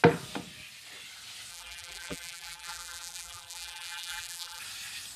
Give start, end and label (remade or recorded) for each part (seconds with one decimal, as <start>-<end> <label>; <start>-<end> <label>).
0.0-1.5 recorded; 1.5-4.6 remade; 4.6-5.2 recorded